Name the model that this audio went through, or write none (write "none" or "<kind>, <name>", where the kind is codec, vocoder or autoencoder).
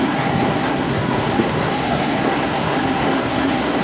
codec, SNAC